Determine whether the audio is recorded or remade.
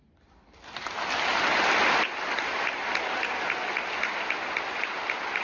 recorded